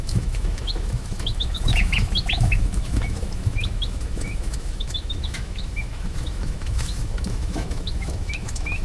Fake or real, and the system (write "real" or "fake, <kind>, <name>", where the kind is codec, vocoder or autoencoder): fake, autoencoder, DAC-VAE